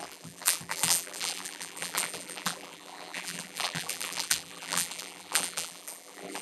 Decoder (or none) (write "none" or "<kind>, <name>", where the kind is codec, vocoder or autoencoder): vocoder, BigVGAN v2